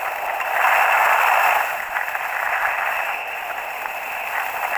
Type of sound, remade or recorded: recorded